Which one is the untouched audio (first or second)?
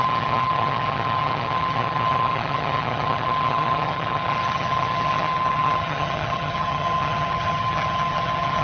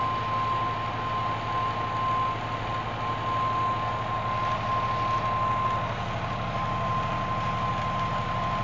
second